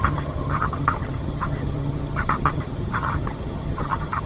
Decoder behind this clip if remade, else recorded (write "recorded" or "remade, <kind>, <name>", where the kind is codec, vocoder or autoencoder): remade, vocoder, HiFi-GAN